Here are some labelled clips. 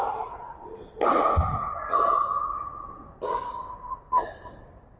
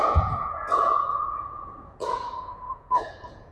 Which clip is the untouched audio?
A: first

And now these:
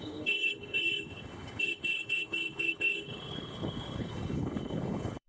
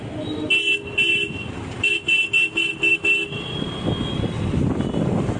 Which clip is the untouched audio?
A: second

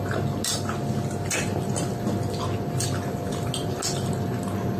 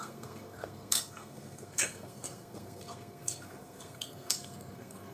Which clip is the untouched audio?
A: first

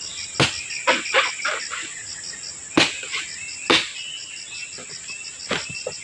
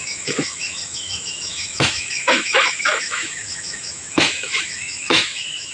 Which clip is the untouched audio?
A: first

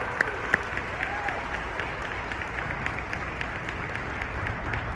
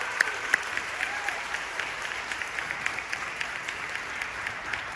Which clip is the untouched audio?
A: first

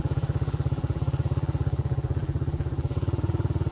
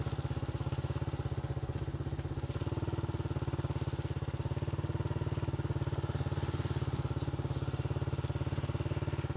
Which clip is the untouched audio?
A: second